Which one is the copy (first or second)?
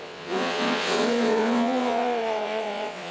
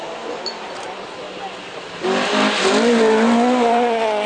first